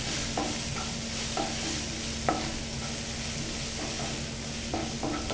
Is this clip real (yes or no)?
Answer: yes